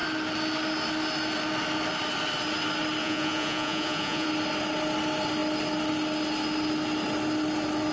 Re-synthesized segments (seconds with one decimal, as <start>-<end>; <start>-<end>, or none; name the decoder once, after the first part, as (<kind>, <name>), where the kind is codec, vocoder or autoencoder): 3.0-4.3 (vocoder, Vocos)